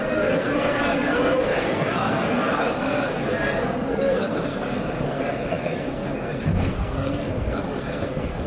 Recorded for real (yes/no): no